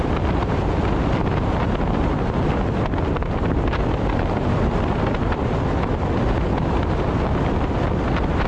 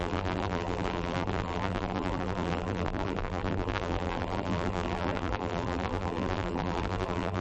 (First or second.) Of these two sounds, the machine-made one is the second